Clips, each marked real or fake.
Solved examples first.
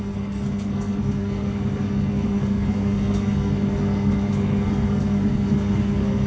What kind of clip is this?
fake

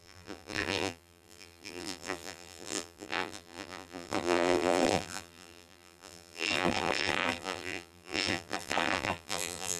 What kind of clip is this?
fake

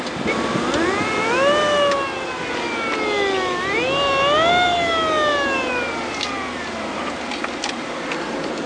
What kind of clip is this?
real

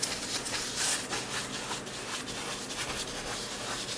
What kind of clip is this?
real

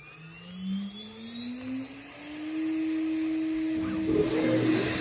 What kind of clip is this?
real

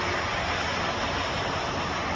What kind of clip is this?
real